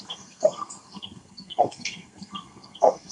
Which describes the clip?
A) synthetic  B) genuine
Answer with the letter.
A